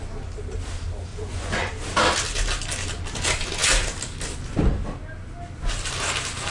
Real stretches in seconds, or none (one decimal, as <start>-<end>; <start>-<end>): 0.0-1.1; 1.7-6.5